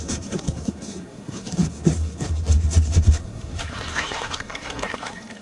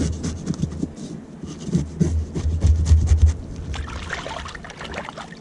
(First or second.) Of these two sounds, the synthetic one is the first